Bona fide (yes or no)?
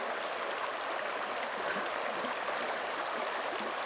yes